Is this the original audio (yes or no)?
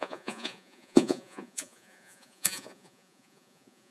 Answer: no